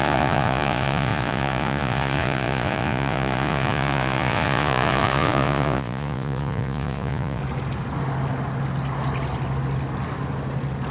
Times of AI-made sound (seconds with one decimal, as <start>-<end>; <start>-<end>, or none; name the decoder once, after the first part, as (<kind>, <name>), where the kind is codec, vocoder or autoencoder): 0.0-7.4 (vocoder, Vocos)